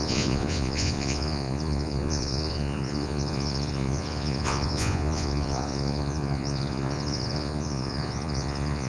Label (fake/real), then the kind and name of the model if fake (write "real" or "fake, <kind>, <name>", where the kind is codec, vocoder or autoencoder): fake, vocoder, Vocos